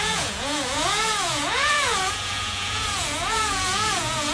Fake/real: fake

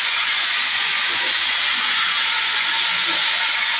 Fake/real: fake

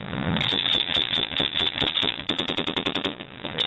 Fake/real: fake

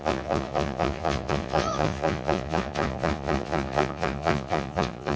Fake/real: fake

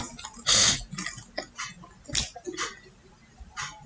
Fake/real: real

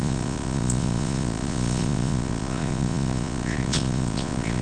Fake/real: fake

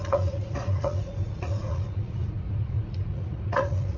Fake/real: fake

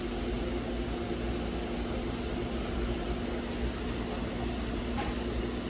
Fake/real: real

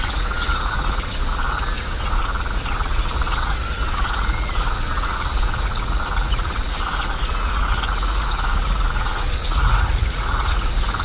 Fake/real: fake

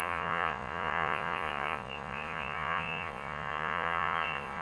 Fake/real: fake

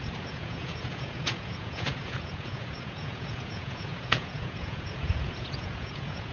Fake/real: fake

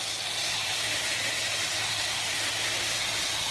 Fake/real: real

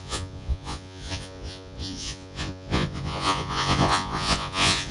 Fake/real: fake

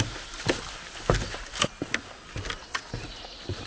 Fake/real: real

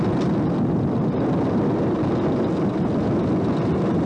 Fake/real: real